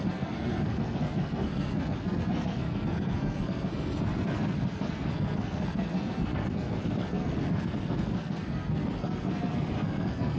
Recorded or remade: remade